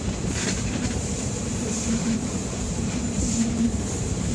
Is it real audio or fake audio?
fake